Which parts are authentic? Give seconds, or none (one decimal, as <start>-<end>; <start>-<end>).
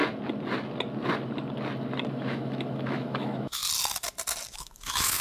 0.0-2.1; 3.6-4.5